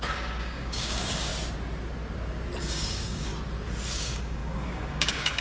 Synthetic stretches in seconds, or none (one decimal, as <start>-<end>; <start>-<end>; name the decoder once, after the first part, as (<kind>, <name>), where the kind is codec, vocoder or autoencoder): 0.0-1.3 (codec, DAC); 2.6-3.3; 3.9-5.4